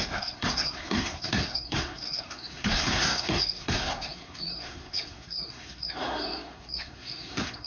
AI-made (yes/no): yes